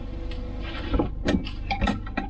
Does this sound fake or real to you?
real